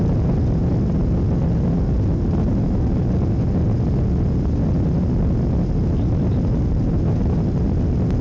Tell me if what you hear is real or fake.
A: real